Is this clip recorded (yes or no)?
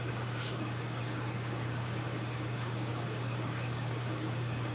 no